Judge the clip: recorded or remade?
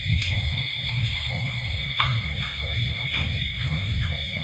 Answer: remade